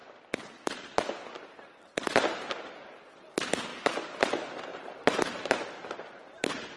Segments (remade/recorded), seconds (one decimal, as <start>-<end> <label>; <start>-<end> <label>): 0.0-4.7 recorded; 4.7-6.8 remade